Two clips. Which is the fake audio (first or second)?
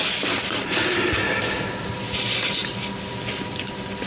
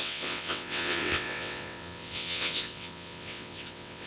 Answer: second